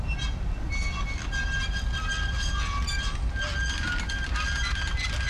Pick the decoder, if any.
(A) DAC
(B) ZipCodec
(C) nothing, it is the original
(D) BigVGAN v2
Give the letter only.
C